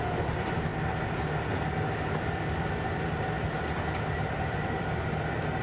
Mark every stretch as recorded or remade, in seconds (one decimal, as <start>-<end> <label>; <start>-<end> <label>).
0.0-5.6 recorded